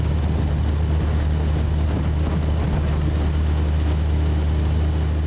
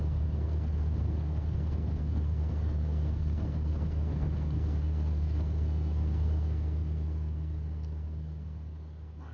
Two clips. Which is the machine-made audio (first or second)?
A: second